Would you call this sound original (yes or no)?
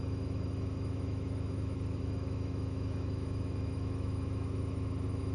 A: no